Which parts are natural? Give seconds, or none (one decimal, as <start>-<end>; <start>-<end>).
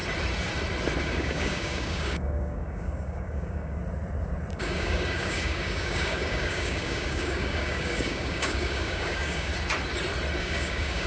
0.0-1.0; 3.8-4.6; 9.5-10.4